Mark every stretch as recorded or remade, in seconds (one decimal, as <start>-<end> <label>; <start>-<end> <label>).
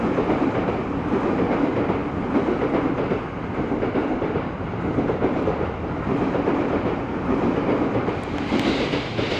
0.0-2.0 recorded; 2.0-2.8 remade; 2.8-4.0 recorded; 4.0-7.1 remade; 7.1-9.4 recorded